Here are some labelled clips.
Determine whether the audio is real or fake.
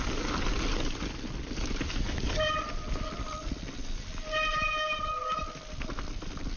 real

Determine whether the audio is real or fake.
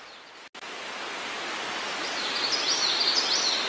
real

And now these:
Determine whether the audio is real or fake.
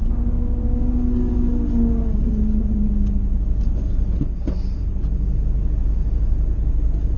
real